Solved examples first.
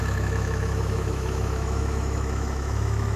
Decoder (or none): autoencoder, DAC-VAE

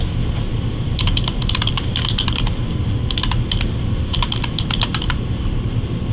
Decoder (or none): none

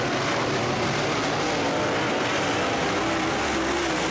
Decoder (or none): none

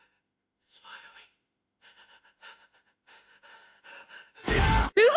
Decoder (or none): autoencoder, DAC-VAE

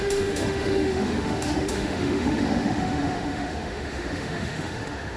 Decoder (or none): autoencoder, DAC-VAE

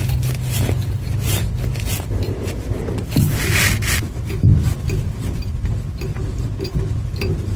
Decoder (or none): none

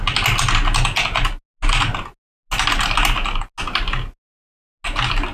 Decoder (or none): none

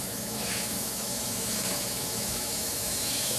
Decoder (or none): autoencoder, DAC-VAE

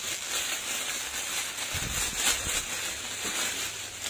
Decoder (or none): none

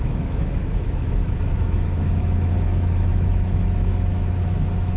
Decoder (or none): autoencoder, DAC-VAE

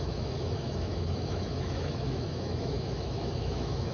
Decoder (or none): autoencoder, DAC-VAE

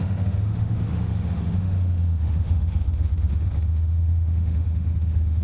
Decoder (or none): autoencoder, DAC-VAE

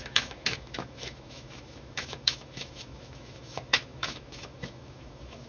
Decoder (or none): autoencoder, DAC-VAE